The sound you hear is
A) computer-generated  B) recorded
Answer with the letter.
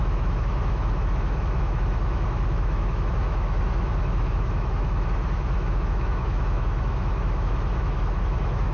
A